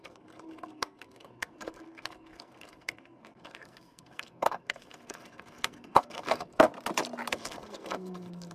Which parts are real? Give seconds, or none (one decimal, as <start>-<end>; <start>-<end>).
6.7-7.3